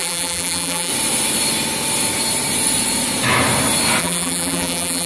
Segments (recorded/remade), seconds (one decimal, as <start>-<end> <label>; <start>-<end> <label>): 0.0-0.9 remade; 0.9-4.0 recorded; 4.0-5.1 remade